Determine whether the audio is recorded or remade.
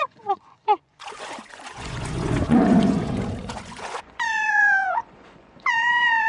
remade